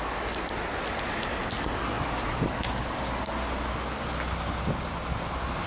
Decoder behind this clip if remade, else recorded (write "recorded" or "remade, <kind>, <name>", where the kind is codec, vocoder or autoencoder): recorded